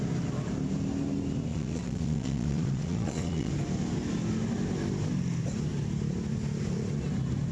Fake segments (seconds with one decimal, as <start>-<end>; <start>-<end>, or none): 1.5-3.5

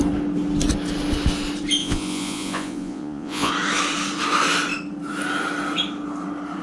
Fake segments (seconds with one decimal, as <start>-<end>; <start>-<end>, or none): 1.8-3.5

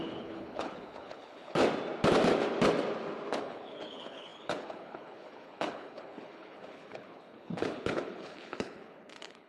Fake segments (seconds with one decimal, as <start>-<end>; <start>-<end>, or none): 0.0-1.6; 3.4-9.5

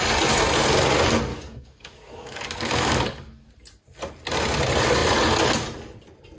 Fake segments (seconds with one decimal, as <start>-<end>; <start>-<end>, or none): 1.3-3.5

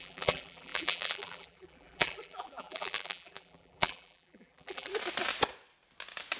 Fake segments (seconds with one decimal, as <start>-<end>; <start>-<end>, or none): 0.0-4.9

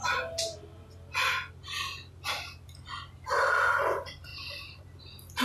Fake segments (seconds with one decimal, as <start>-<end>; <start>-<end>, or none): 4.3-5.0

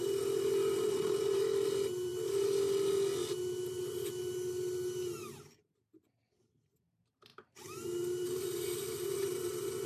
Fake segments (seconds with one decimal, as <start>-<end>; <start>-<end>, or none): 7.3-9.9

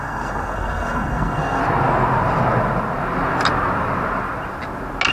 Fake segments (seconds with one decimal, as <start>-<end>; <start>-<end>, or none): 0.0-1.6